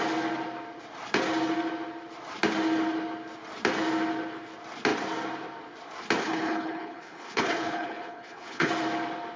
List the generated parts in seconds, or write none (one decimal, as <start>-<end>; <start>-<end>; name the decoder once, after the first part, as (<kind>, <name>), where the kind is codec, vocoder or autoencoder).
6.2-8.7 (codec, HILCodec)